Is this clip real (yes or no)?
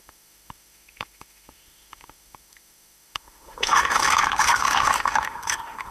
no